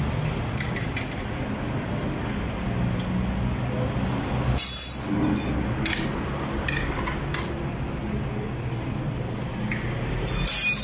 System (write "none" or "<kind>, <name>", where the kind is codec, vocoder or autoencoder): none